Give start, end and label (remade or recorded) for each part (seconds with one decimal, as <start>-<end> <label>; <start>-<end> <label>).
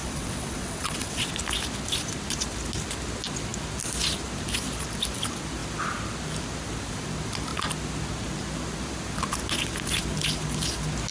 0.0-1.3 remade; 1.3-11.1 recorded